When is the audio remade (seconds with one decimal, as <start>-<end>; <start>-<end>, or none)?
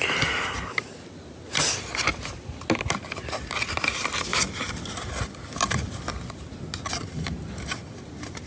none